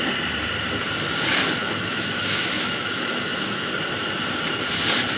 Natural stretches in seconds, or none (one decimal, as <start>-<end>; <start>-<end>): 0.0-1.6; 3.7-5.2